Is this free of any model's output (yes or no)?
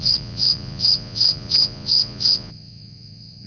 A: no